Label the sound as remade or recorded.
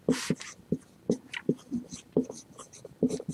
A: remade